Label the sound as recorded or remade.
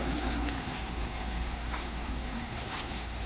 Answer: remade